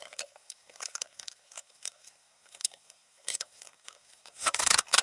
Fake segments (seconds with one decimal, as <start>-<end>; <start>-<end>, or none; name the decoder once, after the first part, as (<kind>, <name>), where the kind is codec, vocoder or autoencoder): 0.0-5.0 (codec, SNAC)